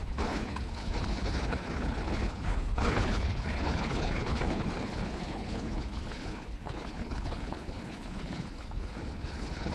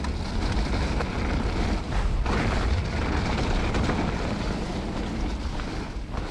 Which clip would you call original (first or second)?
second